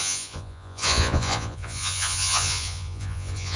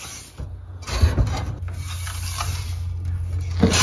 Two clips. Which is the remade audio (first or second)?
first